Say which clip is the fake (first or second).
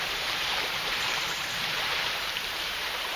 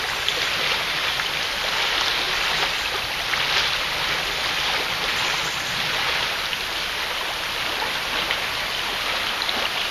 first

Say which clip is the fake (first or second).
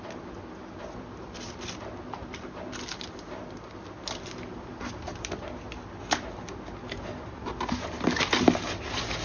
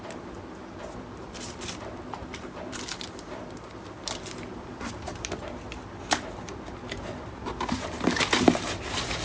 second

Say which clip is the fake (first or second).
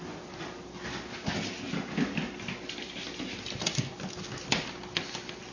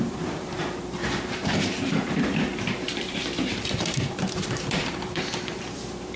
second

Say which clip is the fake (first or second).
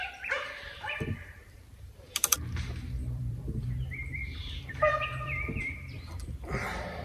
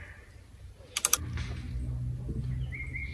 first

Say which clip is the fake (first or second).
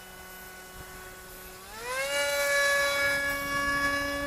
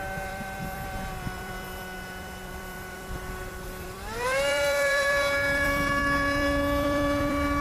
second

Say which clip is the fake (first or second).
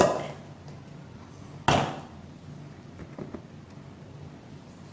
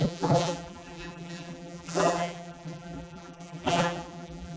second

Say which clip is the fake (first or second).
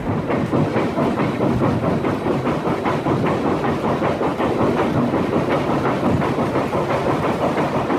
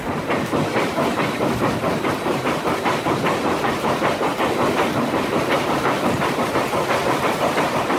second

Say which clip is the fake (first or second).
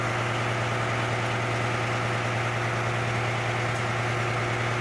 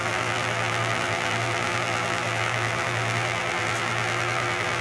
second